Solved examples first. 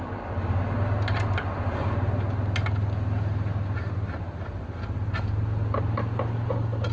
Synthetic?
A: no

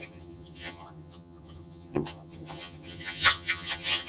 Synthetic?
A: yes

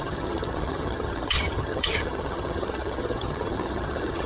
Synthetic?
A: yes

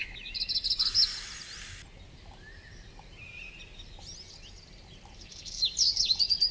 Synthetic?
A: no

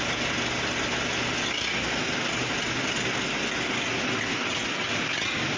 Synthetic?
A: no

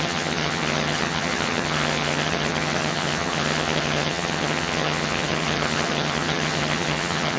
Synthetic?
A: yes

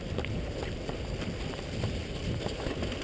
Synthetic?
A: no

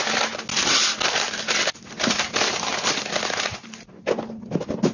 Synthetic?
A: no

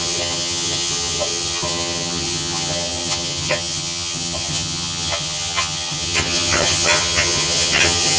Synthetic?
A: yes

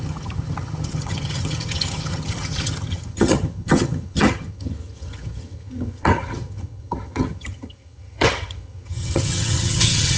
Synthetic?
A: yes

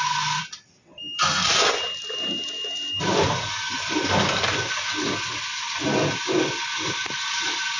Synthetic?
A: no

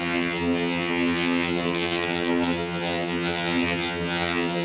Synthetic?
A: yes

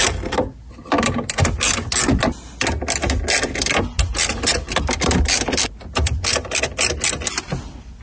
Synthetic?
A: no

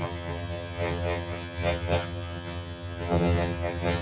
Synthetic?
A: yes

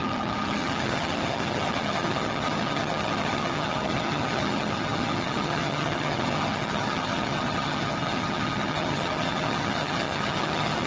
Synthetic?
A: yes